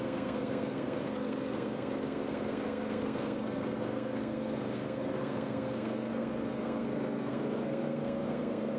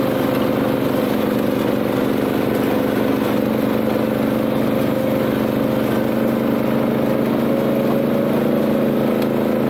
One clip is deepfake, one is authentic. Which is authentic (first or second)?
second